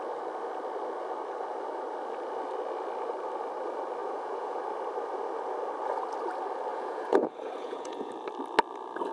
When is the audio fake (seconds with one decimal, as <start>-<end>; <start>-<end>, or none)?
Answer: 4.0-4.6; 6.7-8.1